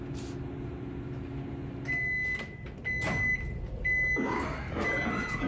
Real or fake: real